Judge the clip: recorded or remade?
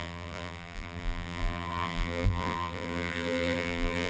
remade